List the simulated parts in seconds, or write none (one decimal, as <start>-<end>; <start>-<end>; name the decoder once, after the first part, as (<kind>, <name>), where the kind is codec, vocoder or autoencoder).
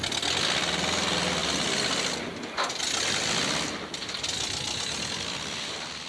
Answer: none